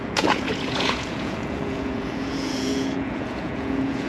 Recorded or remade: remade